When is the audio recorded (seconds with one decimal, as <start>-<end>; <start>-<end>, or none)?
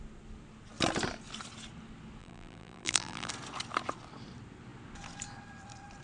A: 0.0-2.2; 3.3-6.0